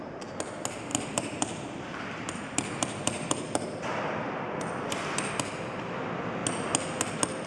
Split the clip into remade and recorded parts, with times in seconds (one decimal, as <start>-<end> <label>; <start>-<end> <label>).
0.0-0.9 recorded; 0.9-5.3 remade; 5.3-7.5 recorded

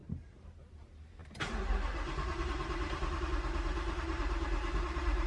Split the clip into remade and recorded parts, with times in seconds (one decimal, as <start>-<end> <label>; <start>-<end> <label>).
0.0-5.3 remade